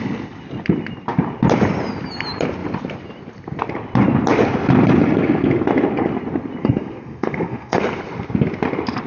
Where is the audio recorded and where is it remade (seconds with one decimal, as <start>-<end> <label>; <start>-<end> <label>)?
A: 0.0-6.6 recorded; 6.6-7.8 remade; 7.8-9.1 recorded